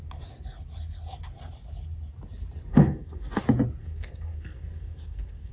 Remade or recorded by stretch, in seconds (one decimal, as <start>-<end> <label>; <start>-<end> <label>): 0.0-2.7 recorded; 2.7-3.4 remade; 3.4-3.8 recorded; 3.8-5.5 remade